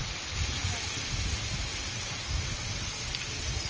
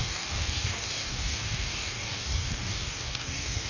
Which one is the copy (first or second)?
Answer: second